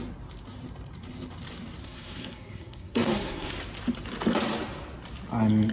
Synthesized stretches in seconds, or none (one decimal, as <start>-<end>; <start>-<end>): 1.8-3.5